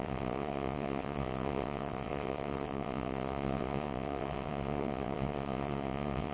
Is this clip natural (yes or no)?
no